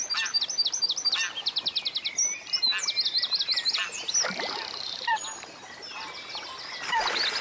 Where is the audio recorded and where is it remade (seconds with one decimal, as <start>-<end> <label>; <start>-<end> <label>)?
0.0-7.4 recorded